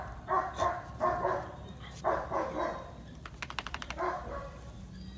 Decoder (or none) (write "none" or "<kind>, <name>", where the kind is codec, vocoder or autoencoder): none